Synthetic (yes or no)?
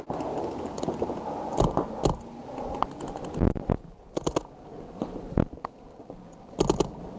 no